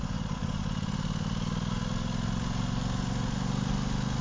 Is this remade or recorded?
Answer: recorded